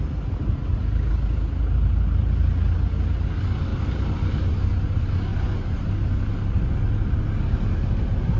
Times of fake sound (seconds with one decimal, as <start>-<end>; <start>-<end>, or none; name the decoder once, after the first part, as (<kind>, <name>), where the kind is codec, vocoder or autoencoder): 3.7-4.5 (vocoder, BigVGAN v2)